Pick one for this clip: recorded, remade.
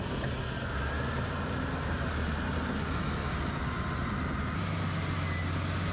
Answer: recorded